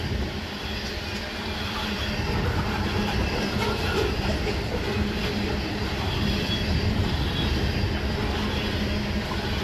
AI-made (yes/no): no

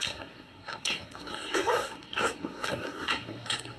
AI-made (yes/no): yes